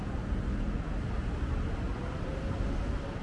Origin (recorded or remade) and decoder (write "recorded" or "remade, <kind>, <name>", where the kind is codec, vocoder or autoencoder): recorded